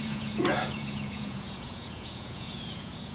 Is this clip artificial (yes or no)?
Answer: yes